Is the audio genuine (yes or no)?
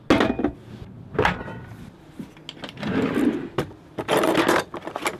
yes